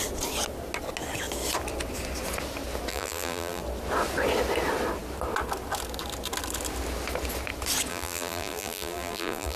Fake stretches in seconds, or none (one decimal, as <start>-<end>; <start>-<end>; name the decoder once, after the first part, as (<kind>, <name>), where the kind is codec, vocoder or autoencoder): 2.9-3.6 (vocoder, BigVGAN v2); 7.9-9.6